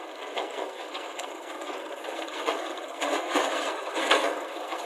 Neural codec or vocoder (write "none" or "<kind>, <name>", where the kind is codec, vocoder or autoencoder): codec, SNAC